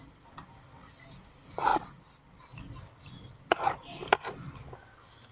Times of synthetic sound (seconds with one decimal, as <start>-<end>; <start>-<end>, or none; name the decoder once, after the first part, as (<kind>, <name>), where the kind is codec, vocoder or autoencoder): 1.7-2.4 (vocoder, BigVGAN v2)